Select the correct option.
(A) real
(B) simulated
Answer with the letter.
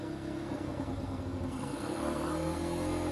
B